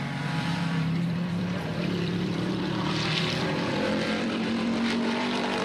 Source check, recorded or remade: remade